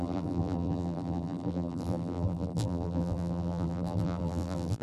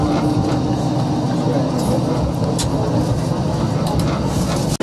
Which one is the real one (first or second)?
second